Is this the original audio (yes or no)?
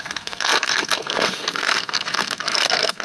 no